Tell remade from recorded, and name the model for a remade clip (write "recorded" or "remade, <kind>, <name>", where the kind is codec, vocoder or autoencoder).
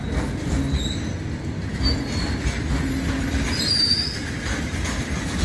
recorded